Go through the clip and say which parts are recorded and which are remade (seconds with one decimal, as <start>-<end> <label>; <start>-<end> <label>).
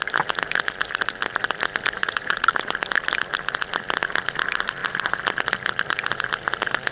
0.0-2.0 recorded; 2.0-2.5 remade; 2.5-6.9 recorded